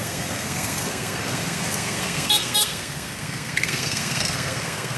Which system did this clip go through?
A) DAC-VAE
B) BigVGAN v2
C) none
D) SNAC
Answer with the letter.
D